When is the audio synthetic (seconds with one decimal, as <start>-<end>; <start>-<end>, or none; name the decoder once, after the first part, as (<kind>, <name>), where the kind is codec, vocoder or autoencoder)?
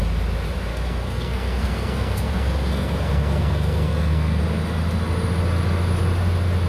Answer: 0.7-4.4 (codec, SNAC)